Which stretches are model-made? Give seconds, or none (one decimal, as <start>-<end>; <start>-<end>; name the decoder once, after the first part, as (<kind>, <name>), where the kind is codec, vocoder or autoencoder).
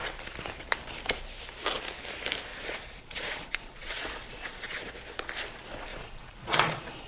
2.5-4.9 (vocoder, Vocos); 5.9-7.1